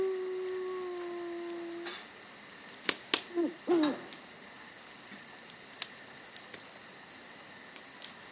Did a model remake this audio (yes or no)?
no